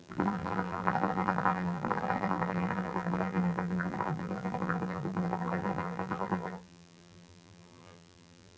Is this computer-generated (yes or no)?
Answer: yes